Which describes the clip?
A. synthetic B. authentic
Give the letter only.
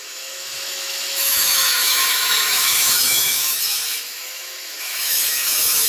A